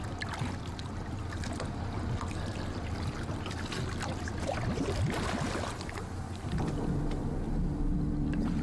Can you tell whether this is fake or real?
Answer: real